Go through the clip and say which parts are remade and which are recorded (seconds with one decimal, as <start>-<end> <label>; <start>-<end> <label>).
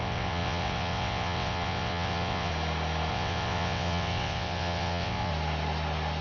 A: 0.0-2.5 remade; 2.5-3.1 recorded; 3.1-5.3 remade; 5.3-6.2 recorded